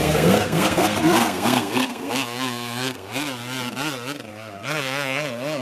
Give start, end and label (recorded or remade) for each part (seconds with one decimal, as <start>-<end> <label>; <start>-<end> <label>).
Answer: 0.0-3.1 remade; 3.1-4.3 recorded; 4.3-5.6 remade